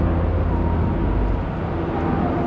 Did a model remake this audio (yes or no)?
no